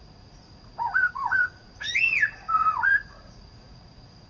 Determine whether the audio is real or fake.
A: fake